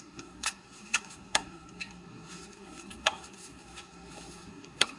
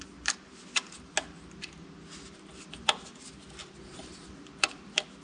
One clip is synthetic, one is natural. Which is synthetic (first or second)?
first